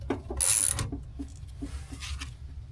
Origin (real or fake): real